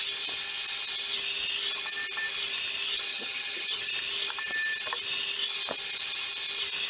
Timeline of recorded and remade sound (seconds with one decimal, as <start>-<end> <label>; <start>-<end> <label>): 0.0-3.1 recorded; 3.1-3.9 remade; 3.9-6.9 recorded